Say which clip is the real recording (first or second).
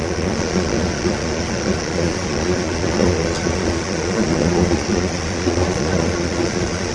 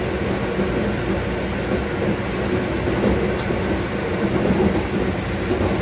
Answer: second